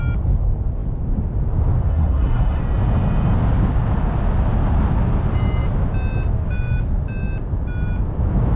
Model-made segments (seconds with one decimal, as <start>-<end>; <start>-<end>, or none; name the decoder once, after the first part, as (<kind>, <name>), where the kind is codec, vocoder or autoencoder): 1.9-2.6 (codec, SNAC)